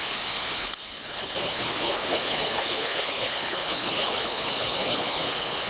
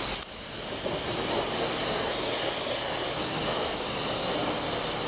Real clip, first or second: second